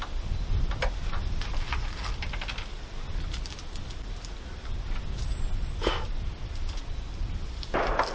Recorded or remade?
recorded